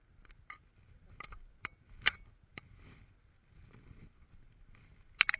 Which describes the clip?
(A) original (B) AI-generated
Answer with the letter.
A